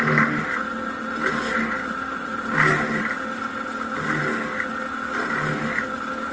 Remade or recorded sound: recorded